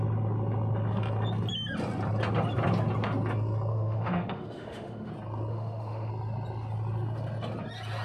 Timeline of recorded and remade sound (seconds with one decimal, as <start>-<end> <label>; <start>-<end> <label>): 0.0-3.7 recorded; 3.7-5.1 remade; 5.1-5.5 recorded; 5.5-6.1 remade; 6.1-8.0 recorded